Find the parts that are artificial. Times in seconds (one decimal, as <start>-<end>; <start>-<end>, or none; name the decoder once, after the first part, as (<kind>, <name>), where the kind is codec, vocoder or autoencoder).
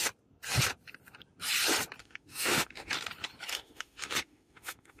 2.0-2.9 (autoencoder, DAC-VAE); 3.5-5.0